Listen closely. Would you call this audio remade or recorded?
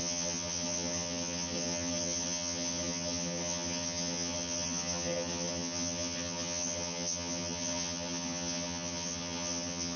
remade